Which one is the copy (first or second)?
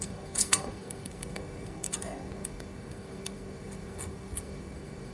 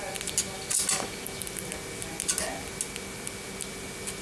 first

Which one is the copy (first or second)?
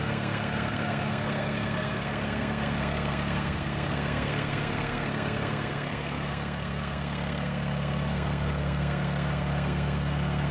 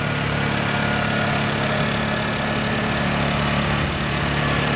first